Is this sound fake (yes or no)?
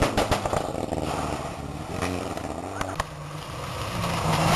no